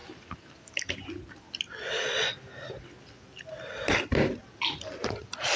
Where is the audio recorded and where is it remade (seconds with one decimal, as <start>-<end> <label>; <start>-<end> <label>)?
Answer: 0.0-5.6 recorded